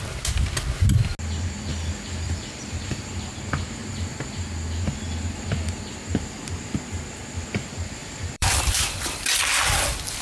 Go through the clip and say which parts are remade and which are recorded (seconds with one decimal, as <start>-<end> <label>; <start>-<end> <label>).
0.0-1.7 recorded; 1.7-3.4 remade; 3.4-8.0 recorded; 8.0-8.9 remade; 8.9-10.2 recorded